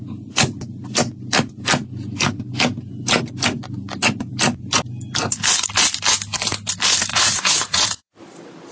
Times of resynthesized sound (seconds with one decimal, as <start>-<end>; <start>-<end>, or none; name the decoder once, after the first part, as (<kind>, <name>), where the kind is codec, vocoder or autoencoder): 7.1-8.1 (vocoder, Vocos)